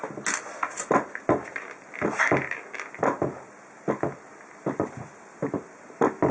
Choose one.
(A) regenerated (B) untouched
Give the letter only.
B